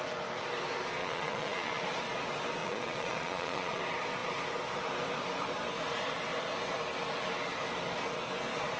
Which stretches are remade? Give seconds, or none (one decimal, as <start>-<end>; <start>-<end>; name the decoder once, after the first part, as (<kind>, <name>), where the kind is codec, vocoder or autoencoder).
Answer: 1.0-1.8 (vocoder, Vocos); 2.6-3.8